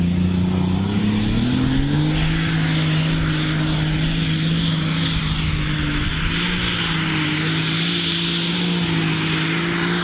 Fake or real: real